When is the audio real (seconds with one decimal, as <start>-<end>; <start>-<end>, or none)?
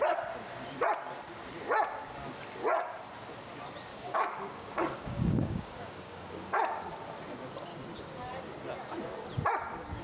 0.0-3.9; 6.9-7.7; 8.3-10.0